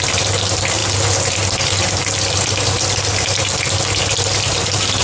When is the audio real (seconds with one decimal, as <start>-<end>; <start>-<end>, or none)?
0.0-5.0